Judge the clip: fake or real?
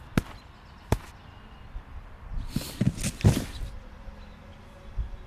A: real